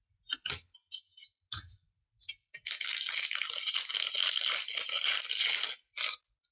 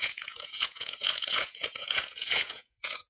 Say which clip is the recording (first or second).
first